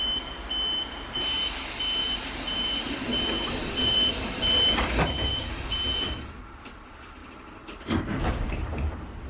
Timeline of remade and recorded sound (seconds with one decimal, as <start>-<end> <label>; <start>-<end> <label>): 0.0-2.0 recorded; 2.0-6.8 remade; 6.8-7.2 recorded; 7.2-7.8 remade; 7.8-9.3 recorded